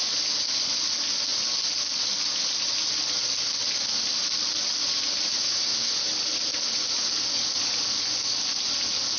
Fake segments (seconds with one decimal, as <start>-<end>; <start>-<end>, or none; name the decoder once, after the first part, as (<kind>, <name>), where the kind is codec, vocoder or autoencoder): 5.4-5.9 (codec, SNAC)